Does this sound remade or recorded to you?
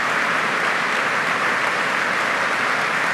recorded